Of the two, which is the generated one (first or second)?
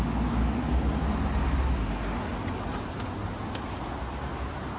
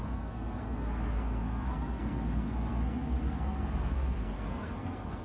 second